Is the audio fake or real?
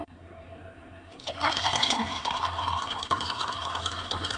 fake